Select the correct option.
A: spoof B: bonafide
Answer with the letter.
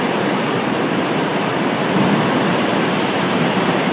A